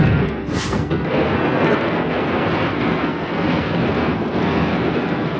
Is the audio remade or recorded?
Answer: remade